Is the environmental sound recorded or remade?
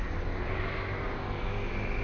recorded